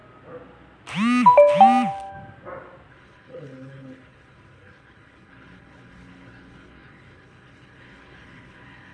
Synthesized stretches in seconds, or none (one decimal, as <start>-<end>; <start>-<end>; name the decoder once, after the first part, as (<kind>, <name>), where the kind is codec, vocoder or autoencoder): 2.9-8.9 (codec, HILCodec)